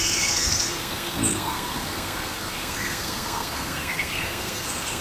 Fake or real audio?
fake